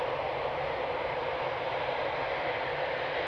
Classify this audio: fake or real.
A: real